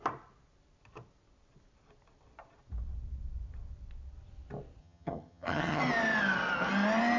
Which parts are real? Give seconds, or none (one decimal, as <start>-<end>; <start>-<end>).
0.0-4.8; 5.8-7.2

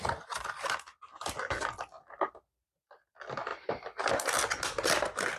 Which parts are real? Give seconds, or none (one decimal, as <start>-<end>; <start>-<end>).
0.0-5.4

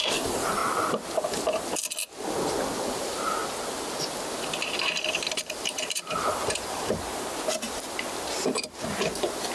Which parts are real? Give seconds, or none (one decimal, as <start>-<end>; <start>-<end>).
0.6-2.9; 3.4-5.3

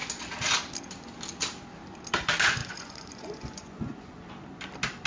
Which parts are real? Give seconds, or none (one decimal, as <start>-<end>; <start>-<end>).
0.0-2.6; 4.3-5.1